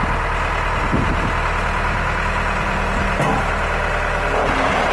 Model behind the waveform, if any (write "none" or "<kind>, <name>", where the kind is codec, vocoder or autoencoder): none